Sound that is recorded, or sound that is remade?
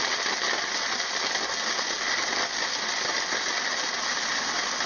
recorded